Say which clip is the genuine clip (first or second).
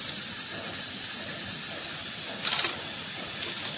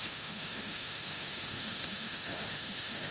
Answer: first